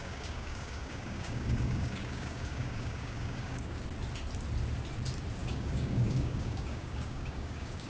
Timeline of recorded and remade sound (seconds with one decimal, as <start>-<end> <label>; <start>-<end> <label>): 0.0-3.8 remade; 3.8-5.4 recorded; 5.4-7.9 remade